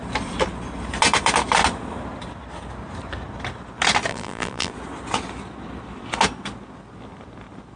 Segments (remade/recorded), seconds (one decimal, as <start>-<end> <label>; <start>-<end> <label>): 0.0-4.1 recorded; 4.1-4.7 remade; 4.7-7.8 recorded